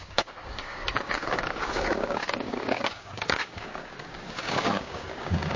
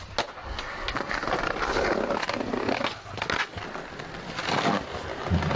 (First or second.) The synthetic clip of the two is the first